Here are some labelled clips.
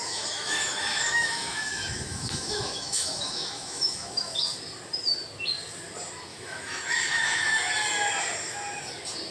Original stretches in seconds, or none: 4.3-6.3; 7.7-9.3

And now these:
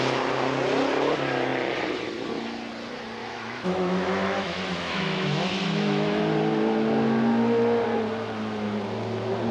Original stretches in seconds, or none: 0.0-3.2; 6.2-9.5

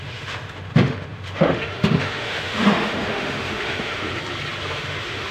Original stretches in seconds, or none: 4.1-4.6